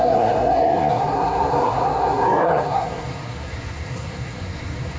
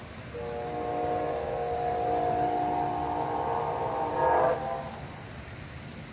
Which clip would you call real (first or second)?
second